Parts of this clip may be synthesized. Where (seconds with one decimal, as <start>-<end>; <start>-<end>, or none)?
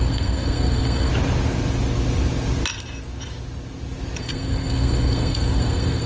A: 0.0-1.1; 4.2-6.1